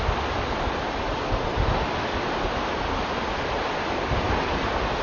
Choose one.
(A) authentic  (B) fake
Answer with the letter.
A